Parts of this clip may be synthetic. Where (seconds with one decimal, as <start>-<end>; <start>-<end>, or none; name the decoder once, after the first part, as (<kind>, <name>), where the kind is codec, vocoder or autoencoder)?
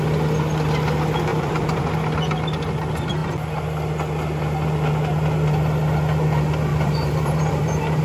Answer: 1.3-1.8 (vocoder, BigVGAN v2); 6.7-8.0